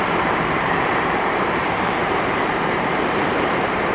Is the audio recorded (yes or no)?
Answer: no